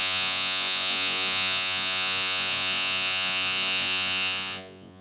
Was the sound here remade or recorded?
remade